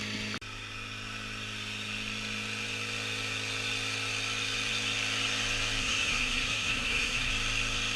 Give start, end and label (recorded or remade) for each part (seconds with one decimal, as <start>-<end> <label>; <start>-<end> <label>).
0.0-5.8 recorded; 5.8-7.3 remade; 7.3-8.0 recorded